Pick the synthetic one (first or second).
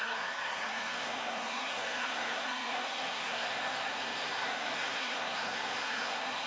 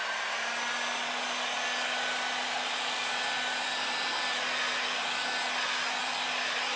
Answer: first